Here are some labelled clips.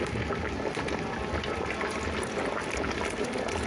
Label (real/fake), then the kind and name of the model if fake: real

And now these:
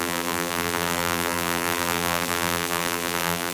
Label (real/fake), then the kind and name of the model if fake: fake, vocoder, BigVGAN v2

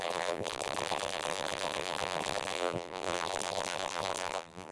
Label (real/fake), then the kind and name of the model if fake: fake, vocoder, BigVGAN v2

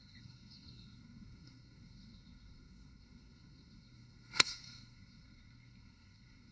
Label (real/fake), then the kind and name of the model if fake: fake, codec, SNAC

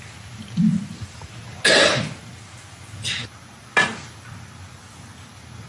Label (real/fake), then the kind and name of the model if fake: real